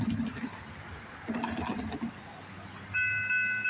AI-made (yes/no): no